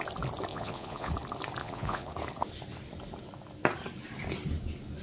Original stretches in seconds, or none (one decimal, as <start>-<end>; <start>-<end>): 0.0-0.5; 1.1-1.6; 2.1-5.0